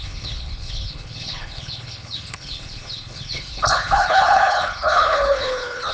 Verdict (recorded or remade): remade